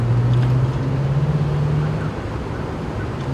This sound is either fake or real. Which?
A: real